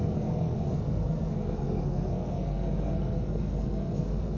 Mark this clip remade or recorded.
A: remade